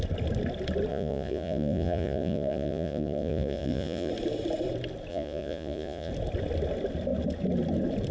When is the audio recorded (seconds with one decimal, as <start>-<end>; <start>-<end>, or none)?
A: 0.0-0.9; 4.1-5.1; 6.1-8.1

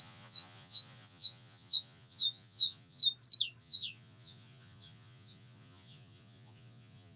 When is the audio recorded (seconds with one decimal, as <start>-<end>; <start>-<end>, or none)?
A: 3.0-3.6

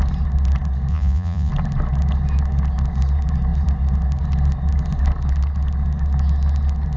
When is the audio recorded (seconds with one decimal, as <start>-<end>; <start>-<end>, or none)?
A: 0.0-0.9; 1.5-7.0

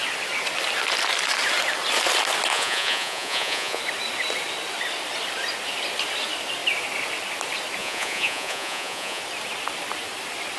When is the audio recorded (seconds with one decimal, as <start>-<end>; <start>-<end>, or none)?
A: 0.0-2.5; 3.8-7.8; 9.2-10.6

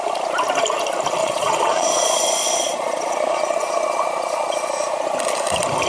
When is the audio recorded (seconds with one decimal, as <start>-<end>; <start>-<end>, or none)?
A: 0.0-1.2; 4.7-5.9

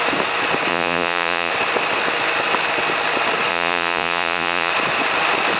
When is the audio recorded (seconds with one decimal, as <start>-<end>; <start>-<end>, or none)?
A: 0.0-0.7; 1.5-3.5; 4.7-5.6

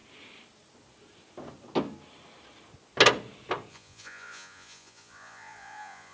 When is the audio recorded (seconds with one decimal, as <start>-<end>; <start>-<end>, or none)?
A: 0.0-3.7

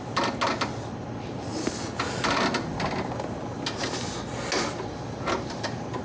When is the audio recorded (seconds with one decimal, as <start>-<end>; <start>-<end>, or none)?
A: 0.0-6.0